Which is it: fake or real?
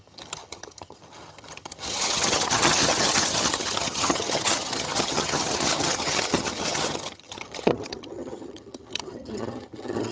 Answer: fake